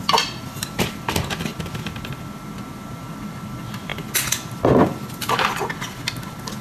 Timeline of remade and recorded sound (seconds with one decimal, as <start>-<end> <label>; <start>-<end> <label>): 0.0-6.6 recorded